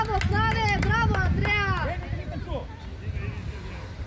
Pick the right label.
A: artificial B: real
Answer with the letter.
B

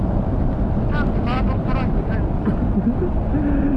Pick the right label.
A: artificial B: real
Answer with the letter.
B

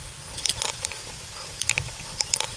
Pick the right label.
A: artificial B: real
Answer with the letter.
A